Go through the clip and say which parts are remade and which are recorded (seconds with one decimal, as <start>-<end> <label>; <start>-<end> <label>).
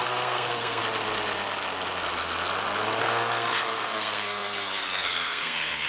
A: 0.0-0.8 remade; 0.8-3.0 recorded; 3.0-5.9 remade